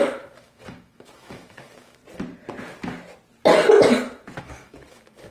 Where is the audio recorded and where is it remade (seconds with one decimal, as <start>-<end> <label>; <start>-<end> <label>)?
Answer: 0.0-2.0 remade; 2.0-4.4 recorded; 4.4-5.3 remade